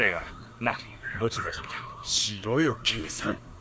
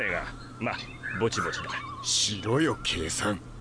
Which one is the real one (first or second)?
second